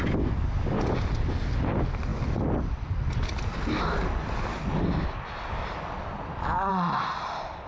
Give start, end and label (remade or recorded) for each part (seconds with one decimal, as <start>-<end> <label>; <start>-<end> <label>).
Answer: 0.0-7.7 recorded